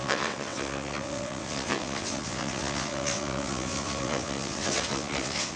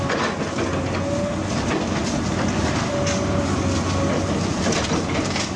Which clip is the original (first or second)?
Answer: second